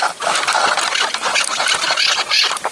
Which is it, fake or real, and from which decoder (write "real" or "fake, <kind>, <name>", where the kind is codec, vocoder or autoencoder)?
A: real